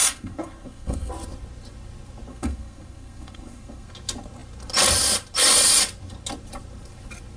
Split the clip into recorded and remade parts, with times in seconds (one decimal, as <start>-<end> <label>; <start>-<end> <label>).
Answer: 0.0-1.1 remade; 1.1-2.3 recorded; 2.3-3.9 remade; 3.9-7.4 recorded